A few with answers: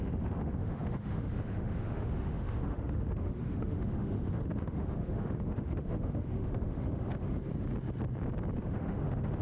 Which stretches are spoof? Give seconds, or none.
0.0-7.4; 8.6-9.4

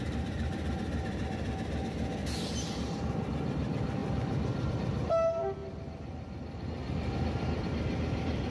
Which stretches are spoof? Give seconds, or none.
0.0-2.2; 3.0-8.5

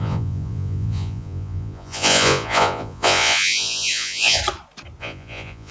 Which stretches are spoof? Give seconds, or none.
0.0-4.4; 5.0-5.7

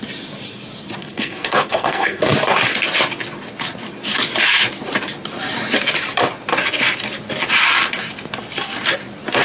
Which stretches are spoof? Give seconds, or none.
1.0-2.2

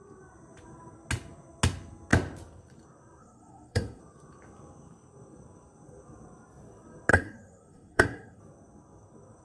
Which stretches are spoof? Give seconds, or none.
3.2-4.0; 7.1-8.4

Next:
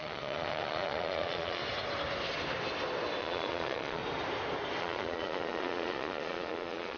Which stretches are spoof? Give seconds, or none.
0.0-1.6; 3.2-4.0; 4.8-7.0

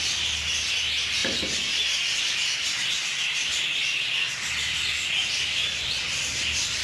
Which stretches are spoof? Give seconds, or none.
none

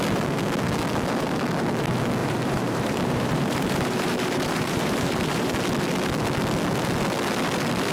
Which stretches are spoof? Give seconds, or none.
2.2-5.5